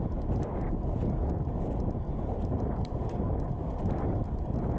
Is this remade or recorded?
recorded